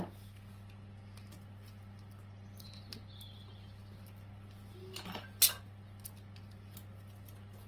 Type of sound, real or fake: real